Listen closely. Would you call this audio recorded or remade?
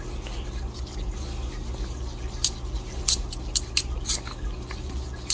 recorded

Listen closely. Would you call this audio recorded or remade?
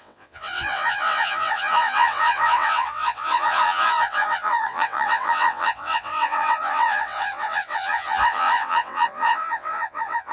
remade